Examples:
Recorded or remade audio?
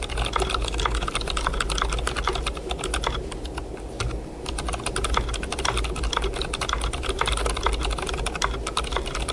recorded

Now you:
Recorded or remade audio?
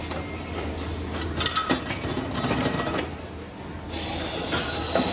recorded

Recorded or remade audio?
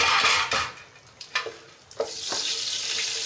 recorded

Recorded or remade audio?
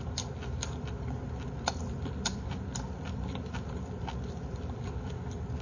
remade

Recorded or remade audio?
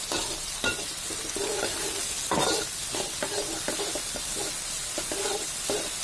remade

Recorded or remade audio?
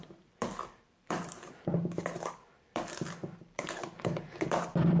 remade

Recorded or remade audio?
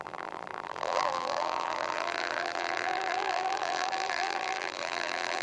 remade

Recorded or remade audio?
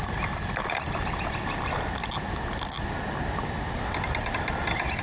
recorded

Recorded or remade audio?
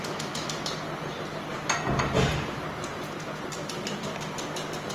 recorded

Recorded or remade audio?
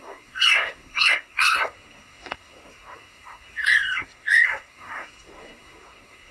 remade